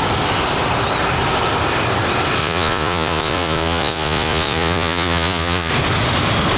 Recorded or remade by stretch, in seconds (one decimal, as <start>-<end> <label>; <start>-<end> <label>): 0.0-2.4 recorded; 2.4-5.7 remade; 5.7-6.6 recorded